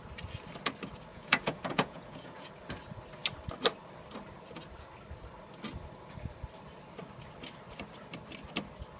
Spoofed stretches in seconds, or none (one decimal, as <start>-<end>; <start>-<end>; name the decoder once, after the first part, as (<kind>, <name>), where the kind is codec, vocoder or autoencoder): 1.1-2.5 (vocoder, Vocos)